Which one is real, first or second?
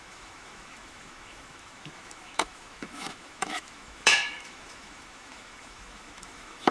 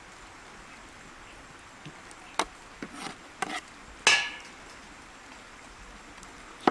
second